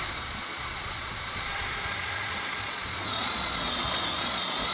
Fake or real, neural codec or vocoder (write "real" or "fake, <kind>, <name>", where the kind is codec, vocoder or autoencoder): fake, vocoder, Vocos